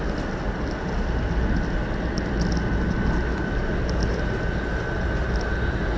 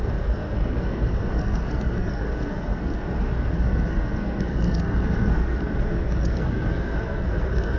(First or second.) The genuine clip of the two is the first